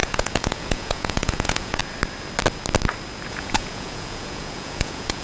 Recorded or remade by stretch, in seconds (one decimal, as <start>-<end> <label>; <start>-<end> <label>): 0.0-1.8 remade; 1.8-3.3 recorded; 3.3-5.2 remade